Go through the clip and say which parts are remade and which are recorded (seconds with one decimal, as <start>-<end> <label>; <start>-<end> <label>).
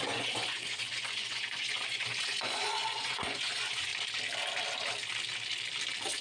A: 0.0-3.9 remade; 3.9-6.2 recorded